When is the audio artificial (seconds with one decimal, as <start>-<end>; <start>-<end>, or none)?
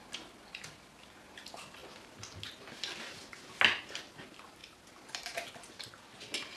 none